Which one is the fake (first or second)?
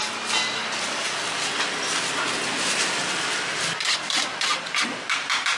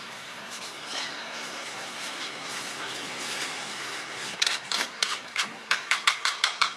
second